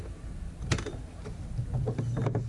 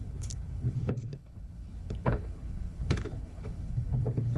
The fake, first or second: second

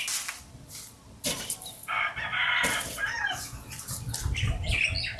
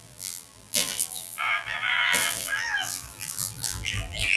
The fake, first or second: second